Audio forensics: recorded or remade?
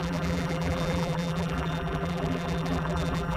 remade